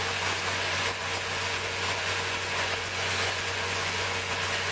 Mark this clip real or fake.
fake